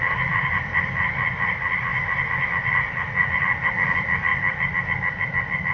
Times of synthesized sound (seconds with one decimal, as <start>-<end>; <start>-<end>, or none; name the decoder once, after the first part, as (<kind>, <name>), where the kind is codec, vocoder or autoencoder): none